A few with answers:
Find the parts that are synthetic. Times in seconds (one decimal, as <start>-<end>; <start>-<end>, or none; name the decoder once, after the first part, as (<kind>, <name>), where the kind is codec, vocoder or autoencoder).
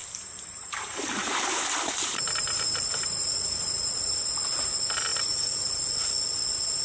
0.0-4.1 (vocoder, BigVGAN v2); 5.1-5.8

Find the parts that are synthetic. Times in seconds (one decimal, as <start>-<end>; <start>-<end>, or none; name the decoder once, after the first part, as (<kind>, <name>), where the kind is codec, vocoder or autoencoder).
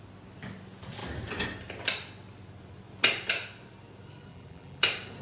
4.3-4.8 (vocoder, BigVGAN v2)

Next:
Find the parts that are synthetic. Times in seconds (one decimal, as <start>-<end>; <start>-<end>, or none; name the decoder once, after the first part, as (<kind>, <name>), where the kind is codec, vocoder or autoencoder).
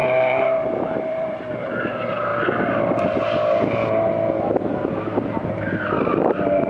0.0-1.5 (vocoder, BigVGAN v2)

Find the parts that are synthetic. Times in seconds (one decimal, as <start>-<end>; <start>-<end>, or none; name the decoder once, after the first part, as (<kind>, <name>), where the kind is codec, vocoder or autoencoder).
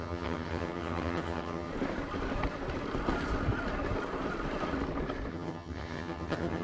0.0-1.7 (vocoder, HiFi-GAN); 5.3-6.6